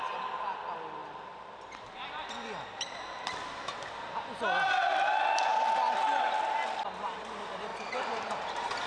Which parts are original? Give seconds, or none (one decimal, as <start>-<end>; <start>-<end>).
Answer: 0.0-7.7; 8.5-8.9

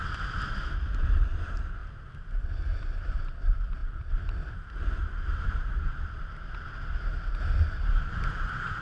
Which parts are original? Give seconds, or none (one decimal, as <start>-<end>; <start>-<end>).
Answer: 1.8-2.5

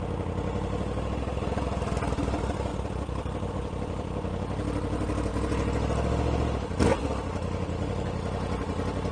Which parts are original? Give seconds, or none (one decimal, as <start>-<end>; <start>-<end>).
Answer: 0.0-9.1

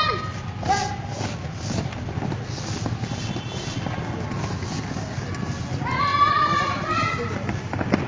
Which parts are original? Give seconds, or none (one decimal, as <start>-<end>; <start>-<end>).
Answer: 0.0-6.1; 7.3-8.1

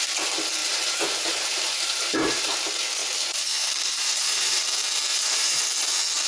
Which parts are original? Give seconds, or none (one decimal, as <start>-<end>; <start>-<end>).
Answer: 0.0-0.6; 2.6-3.0; 4.6-5.1; 5.6-6.3

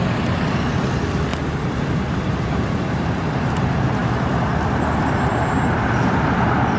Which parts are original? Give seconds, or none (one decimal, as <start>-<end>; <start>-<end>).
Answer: 0.0-1.3; 3.5-6.8

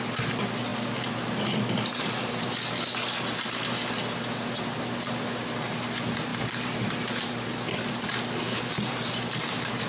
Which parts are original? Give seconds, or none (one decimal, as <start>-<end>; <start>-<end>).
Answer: 0.0-6.3; 6.9-9.9